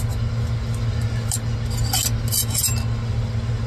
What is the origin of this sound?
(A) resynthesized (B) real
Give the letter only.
B